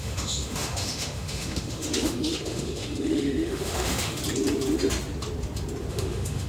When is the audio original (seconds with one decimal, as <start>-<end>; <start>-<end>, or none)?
4.2-5.9